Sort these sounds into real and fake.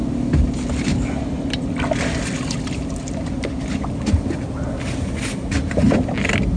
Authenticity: real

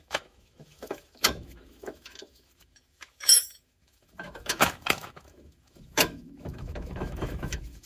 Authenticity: fake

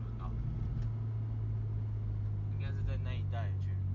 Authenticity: real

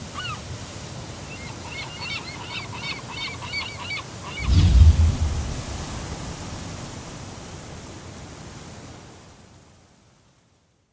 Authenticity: real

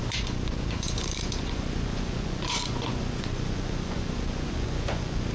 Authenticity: fake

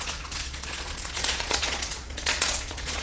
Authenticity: fake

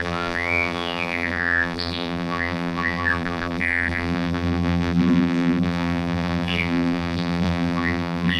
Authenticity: fake